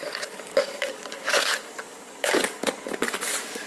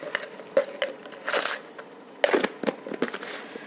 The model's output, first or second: first